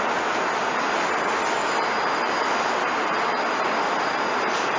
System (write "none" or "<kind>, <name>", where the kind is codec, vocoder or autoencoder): none